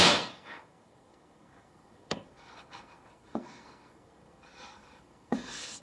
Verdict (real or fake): fake